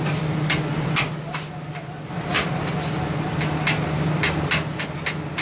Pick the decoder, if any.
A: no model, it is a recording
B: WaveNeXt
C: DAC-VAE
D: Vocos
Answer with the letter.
A